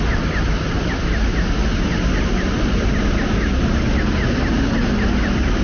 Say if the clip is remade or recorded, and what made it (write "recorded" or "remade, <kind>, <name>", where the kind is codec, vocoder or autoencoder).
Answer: recorded